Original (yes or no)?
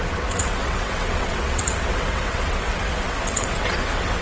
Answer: no